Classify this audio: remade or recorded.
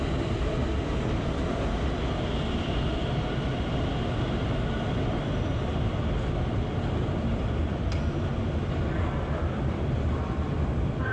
recorded